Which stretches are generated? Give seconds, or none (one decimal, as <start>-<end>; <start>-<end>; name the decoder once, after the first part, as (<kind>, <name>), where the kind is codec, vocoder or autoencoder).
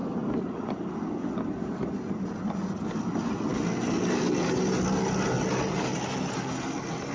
none